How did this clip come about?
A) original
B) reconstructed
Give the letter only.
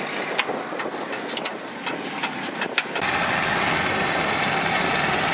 A